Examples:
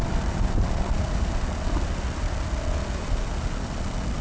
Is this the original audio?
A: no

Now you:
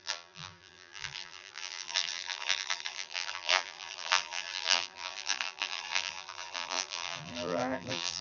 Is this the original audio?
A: no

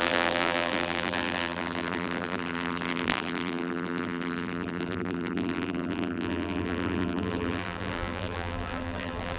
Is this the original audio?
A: no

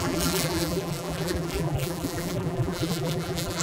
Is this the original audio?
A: no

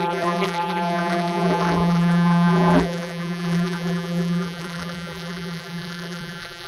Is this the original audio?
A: no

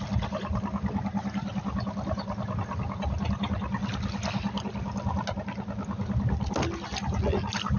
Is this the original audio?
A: yes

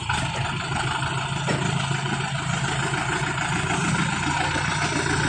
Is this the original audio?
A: yes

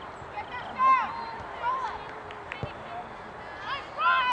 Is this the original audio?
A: yes